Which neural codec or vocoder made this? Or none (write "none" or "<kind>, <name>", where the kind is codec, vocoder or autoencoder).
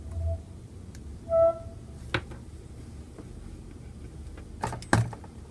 none